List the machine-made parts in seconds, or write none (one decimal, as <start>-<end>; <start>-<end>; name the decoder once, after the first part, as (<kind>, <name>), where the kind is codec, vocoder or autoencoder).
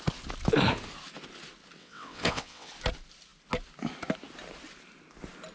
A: 1.8-2.7 (vocoder, WaveNeXt)